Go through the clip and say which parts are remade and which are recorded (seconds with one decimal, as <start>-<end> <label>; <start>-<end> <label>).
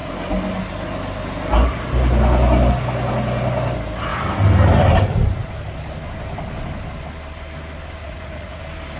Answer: 0.0-8.0 recorded; 8.0-8.6 remade; 8.6-9.0 recorded